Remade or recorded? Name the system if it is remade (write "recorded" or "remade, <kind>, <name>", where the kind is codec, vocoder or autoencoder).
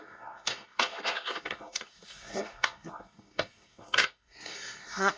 remade, codec, SNAC